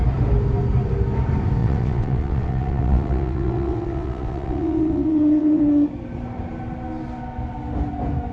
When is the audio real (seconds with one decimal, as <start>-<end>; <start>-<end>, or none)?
0.0-1.6; 5.6-8.3